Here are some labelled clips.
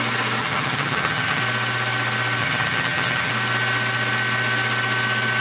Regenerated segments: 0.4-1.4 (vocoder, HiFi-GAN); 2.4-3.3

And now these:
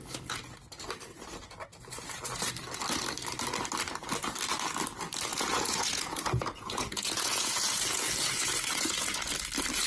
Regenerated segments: 5.3-9.3 (vocoder, Vocos)

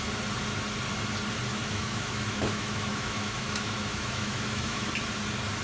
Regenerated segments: 1.5-4.9 (autoencoder, DAC-VAE)

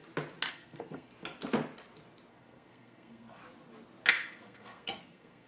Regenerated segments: 0.5-1.1 (codec, SNAC); 2.3-3.4; 4.1-5.5

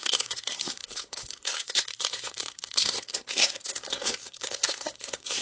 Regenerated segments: 0.0-5.4 (codec, SNAC)